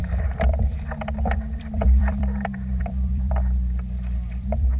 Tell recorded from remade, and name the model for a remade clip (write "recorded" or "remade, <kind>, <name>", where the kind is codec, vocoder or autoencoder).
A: remade, vocoder, BigVGAN v2